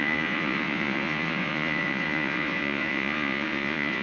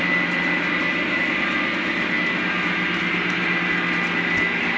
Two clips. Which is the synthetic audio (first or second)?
first